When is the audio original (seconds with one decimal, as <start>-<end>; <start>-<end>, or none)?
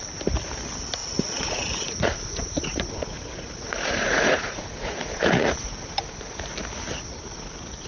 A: 0.0-1.0; 5.7-7.9